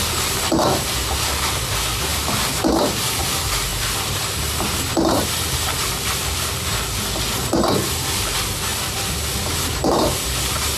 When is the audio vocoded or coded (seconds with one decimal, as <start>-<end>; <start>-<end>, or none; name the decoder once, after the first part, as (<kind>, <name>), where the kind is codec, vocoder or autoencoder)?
2.1-2.8 (vocoder, BigVGAN v2); 3.7-4.6; 8.7-10.1